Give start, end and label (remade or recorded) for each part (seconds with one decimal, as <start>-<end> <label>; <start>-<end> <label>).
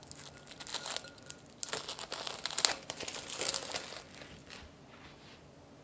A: 0.0-5.8 recorded